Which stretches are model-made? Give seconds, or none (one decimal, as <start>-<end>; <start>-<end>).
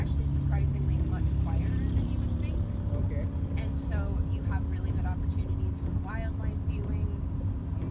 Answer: none